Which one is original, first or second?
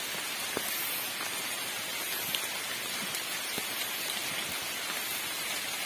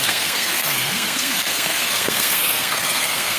first